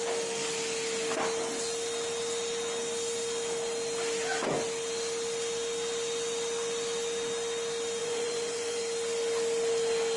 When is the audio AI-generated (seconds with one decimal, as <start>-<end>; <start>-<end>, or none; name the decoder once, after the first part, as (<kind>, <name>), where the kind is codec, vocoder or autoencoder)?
8.0-8.8 (vocoder, Vocos)